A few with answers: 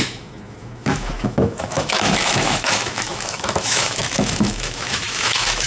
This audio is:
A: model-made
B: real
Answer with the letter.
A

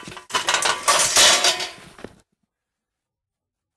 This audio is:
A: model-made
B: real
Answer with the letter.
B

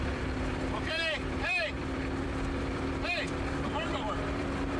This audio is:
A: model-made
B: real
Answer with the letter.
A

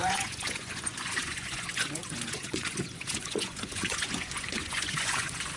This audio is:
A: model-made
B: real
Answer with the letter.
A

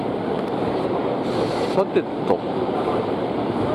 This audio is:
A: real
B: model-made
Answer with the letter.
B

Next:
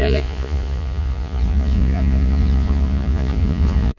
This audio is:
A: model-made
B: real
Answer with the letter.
A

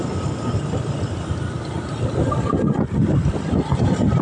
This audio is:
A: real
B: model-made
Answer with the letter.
A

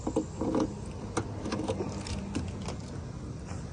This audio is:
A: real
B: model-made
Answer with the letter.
A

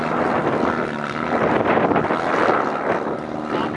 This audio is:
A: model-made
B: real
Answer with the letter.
B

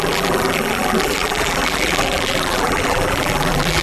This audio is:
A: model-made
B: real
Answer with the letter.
A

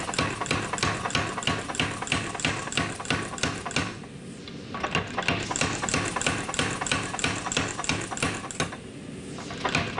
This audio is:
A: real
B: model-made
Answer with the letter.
A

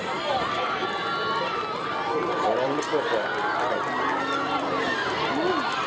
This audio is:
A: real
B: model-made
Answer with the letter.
B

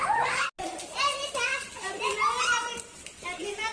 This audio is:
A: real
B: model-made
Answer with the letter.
A